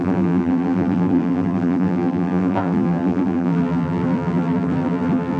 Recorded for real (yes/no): no